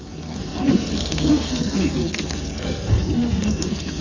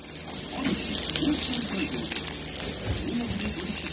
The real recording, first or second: second